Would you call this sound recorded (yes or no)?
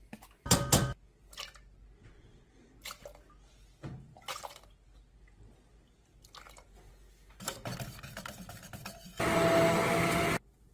yes